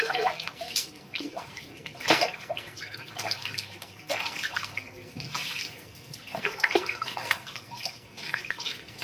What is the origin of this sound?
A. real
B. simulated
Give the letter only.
B